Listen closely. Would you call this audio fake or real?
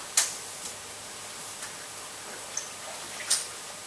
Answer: real